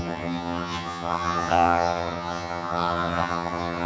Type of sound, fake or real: fake